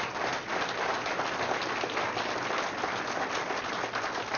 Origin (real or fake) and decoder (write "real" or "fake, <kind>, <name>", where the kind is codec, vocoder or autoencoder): real